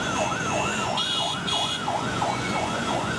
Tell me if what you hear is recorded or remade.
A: remade